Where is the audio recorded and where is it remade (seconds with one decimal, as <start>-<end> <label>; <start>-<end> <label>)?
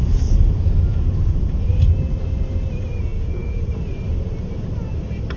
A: 0.0-0.9 recorded; 0.9-1.7 remade; 1.7-3.1 recorded; 3.1-3.7 remade; 3.7-5.4 recorded